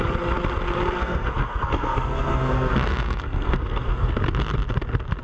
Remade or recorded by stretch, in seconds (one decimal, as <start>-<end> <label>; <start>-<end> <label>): 0.0-1.0 recorded; 1.0-4.1 remade; 4.1-5.2 recorded